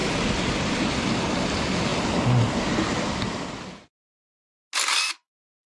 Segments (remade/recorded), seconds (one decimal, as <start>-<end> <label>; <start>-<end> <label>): 0.0-5.7 recorded